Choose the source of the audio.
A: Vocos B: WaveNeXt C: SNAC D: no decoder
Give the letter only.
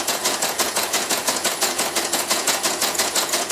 A